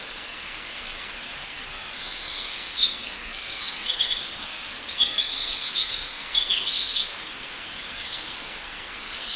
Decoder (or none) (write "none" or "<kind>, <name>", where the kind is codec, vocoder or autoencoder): codec, SNAC